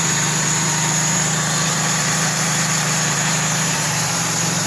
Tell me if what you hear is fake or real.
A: fake